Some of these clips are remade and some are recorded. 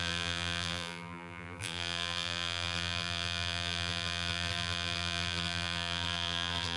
remade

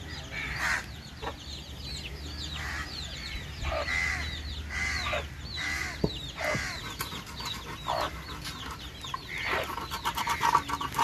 recorded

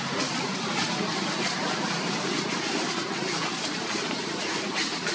remade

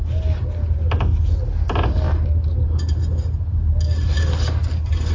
recorded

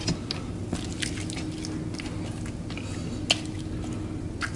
recorded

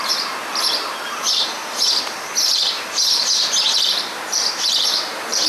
remade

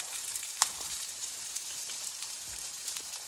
remade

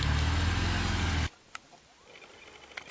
recorded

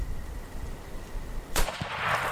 remade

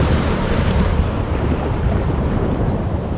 remade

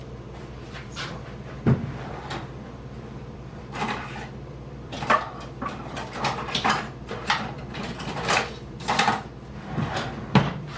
remade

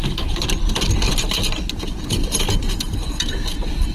recorded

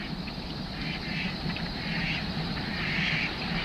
remade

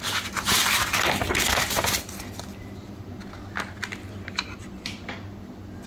recorded